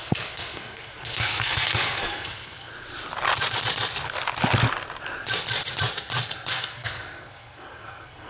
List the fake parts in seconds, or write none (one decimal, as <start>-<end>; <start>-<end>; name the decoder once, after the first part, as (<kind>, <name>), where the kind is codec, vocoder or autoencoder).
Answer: 0.0-2.7 (codec, SNAC); 6.5-8.3